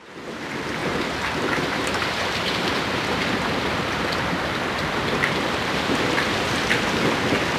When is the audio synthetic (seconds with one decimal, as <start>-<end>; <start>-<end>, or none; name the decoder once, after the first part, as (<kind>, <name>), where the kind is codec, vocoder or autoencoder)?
0.8-2.5 (vocoder, BigVGAN v2)